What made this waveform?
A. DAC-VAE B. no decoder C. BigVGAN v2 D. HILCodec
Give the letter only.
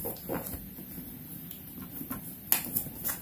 B